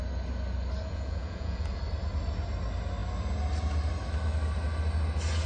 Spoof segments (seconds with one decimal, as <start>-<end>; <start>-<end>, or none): 0.9-1.8